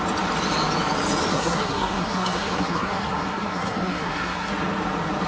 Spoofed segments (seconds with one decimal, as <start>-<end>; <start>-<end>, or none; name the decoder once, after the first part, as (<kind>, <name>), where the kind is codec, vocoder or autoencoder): 1.3-4.5 (codec, SNAC)